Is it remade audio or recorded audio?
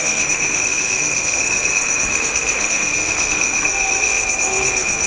remade